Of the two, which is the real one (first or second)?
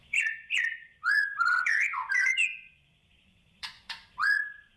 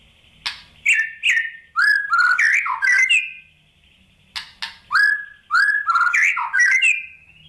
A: second